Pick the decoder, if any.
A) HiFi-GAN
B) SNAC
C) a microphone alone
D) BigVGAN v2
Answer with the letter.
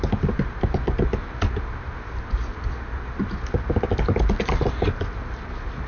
C